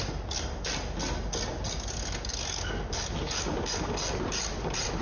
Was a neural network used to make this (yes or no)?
no